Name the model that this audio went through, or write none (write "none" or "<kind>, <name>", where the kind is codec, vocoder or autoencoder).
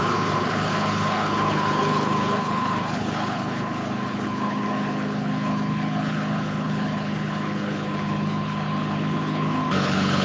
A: codec, HILCodec